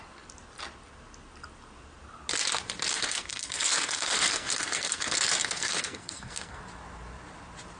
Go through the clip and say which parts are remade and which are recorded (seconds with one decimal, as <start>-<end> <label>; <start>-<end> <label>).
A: 0.0-2.9 recorded; 2.9-6.6 remade; 6.6-7.8 recorded